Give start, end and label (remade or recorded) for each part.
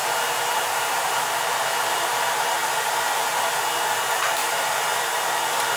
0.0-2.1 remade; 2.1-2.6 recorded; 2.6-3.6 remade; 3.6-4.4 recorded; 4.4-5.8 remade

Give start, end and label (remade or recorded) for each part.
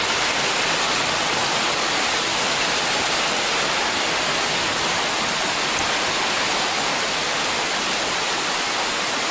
0.0-9.3 recorded